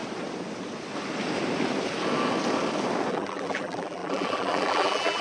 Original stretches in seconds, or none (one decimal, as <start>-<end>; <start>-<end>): 0.0-3.1